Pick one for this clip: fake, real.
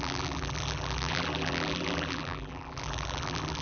fake